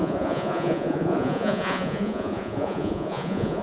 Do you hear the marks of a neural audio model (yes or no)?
yes